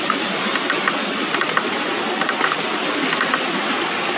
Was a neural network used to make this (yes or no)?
no